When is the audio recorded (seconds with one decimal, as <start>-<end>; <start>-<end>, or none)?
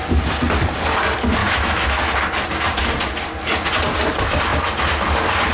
0.0-1.4; 2.0-5.5